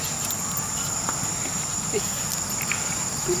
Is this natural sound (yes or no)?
yes